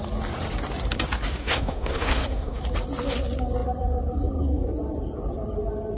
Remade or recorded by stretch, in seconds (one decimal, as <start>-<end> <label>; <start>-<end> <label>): 0.0-1.4 recorded; 1.4-2.6 remade; 2.6-6.0 recorded